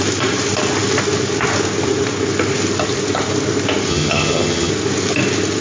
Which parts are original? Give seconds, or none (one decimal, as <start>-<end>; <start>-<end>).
0.0-3.9; 4.7-5.6